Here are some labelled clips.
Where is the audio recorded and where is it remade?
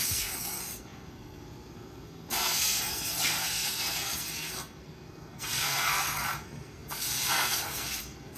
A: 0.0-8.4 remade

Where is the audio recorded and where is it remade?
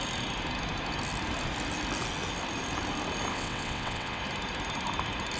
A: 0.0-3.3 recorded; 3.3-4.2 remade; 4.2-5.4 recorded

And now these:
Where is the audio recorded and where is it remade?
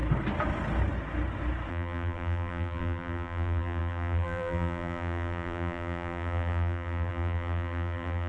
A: 0.0-1.7 recorded; 1.7-8.3 remade